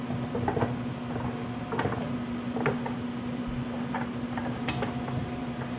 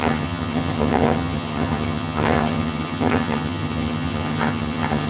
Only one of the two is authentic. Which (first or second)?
first